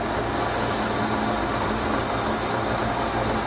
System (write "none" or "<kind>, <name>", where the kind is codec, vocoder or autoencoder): none